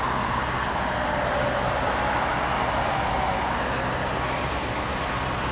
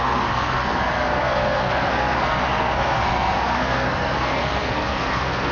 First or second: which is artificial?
second